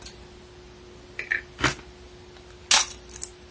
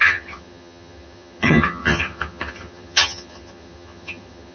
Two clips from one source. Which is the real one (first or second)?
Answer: first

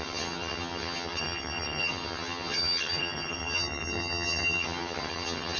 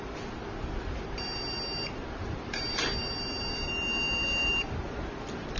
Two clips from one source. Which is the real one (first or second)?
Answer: second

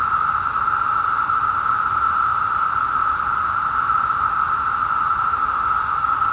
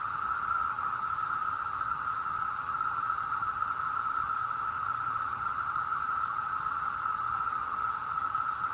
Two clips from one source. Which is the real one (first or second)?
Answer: first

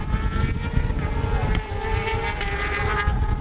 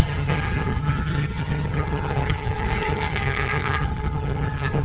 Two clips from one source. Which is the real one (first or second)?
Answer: first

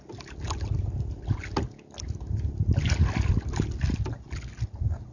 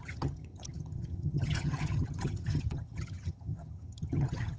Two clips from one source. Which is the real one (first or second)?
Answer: first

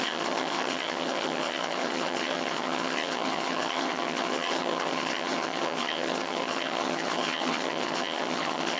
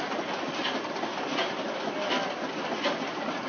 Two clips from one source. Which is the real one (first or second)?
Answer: second